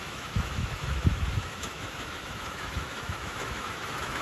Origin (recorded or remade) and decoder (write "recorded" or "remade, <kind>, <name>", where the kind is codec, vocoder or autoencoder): remade, autoencoder, DAC-VAE